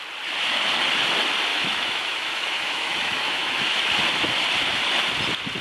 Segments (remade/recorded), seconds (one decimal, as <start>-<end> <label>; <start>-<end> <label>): 0.0-1.5 recorded; 1.5-3.6 remade; 3.6-5.6 recorded